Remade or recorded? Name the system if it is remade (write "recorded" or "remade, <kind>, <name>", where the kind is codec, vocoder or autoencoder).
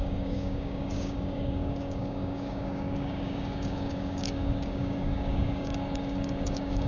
remade, codec, DAC